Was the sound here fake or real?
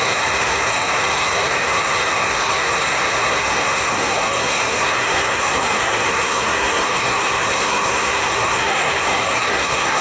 fake